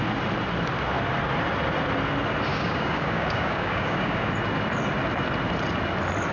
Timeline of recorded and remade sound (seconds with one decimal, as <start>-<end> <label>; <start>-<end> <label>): 0.0-2.5 recorded; 2.5-4.3 remade; 4.3-6.3 recorded